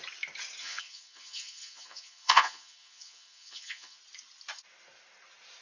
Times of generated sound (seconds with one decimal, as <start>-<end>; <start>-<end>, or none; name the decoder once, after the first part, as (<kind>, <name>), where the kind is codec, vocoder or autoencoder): 0.6-4.0 (vocoder, Vocos)